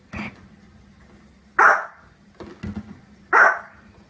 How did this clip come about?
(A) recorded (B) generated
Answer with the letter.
A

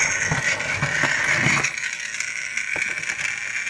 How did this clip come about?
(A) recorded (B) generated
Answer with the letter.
A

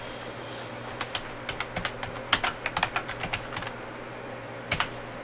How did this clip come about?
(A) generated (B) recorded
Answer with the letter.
B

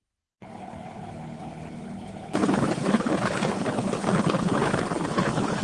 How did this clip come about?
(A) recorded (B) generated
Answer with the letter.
B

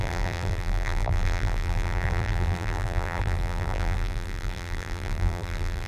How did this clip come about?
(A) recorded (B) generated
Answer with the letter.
B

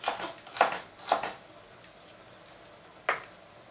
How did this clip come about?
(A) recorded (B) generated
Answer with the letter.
A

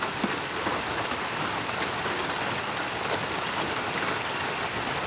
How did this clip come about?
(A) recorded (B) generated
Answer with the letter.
A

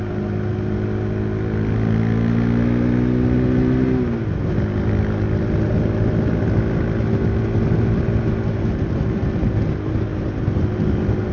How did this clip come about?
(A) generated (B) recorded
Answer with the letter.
B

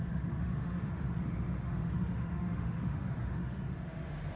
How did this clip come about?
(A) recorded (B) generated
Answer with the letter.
B